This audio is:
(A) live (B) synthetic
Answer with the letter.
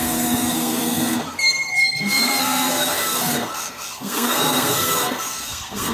B